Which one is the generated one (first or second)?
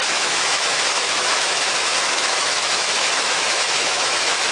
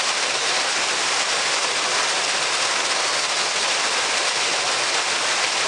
first